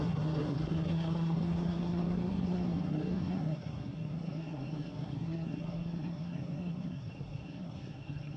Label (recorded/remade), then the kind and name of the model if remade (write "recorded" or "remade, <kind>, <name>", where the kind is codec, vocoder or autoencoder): remade, codec, SNAC